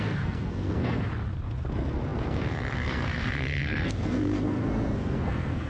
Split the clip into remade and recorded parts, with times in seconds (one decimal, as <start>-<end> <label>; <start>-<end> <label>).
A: 0.0-1.1 remade; 1.1-1.7 recorded; 1.7-5.7 remade